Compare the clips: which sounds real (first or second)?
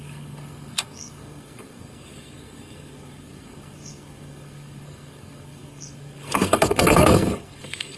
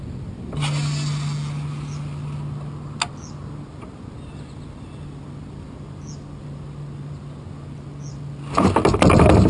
second